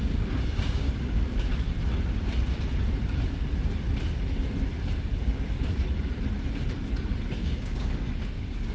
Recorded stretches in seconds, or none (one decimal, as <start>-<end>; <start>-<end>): 1.5-5.2; 5.7-7.4